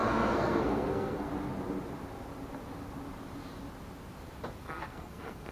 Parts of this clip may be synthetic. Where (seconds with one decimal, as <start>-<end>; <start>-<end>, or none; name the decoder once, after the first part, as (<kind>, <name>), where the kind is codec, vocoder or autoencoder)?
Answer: 0.0-1.3 (codec, SNAC); 4.6-5.5